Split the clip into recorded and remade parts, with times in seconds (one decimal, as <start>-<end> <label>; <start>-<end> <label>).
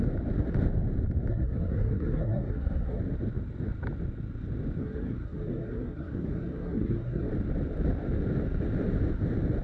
0.0-1.3 recorded; 1.3-3.0 remade; 3.0-4.8 recorded; 4.8-7.3 remade; 7.3-9.6 recorded